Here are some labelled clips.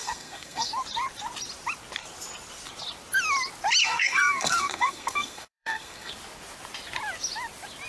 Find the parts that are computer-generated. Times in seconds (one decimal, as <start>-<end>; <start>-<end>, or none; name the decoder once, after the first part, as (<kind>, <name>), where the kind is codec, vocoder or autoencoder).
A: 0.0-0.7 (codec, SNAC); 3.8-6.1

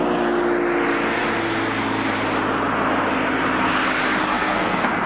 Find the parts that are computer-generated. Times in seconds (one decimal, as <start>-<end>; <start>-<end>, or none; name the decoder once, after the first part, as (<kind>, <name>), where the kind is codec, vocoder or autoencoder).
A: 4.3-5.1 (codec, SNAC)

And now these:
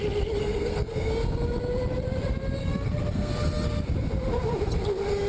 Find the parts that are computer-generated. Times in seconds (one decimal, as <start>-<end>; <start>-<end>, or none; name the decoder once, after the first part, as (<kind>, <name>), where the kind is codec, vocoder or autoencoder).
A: 0.4-1.1 (codec, SNAC); 2.6-3.3

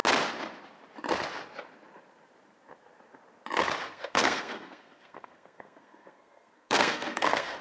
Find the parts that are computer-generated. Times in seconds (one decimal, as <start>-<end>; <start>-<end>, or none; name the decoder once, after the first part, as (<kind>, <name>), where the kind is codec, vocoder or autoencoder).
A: 3.8-7.6 (codec, SNAC)

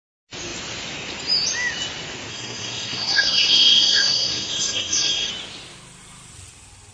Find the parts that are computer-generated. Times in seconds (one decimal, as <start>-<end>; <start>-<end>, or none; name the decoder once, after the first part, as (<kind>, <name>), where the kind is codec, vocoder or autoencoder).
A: 2.3-5.3 (codec, SNAC)

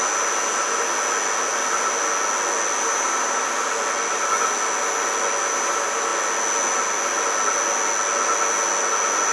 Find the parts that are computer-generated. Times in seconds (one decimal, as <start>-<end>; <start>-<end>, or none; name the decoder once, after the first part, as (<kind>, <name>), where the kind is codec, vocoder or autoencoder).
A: none

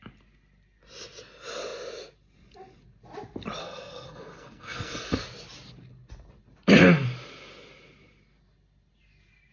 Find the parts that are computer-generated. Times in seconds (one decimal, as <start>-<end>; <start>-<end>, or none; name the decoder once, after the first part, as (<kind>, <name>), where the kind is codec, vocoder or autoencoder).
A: 3.6-5.2 (codec, SNAC)